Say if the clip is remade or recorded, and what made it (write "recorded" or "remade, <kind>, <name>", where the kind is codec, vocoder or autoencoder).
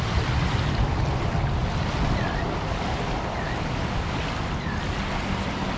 recorded